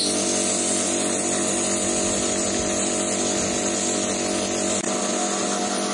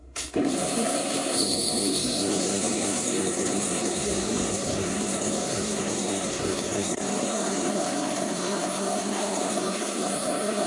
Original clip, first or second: first